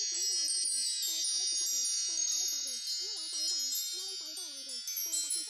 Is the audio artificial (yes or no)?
no